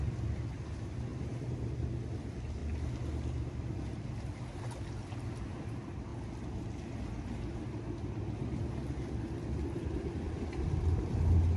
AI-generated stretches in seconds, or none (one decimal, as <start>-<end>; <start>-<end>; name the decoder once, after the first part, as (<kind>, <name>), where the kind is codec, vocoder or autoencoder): 1.1-1.7 (vocoder, BigVGAN v2)